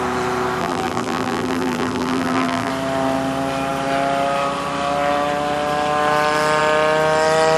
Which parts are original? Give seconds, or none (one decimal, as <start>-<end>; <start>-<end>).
0.0-0.6; 2.7-7.6